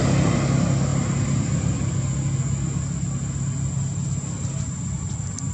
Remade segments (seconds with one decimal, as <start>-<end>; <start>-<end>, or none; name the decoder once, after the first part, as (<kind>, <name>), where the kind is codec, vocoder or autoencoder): none